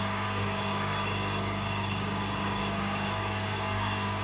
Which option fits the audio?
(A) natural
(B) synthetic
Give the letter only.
B